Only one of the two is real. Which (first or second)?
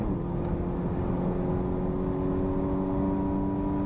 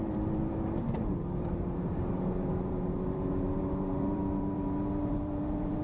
first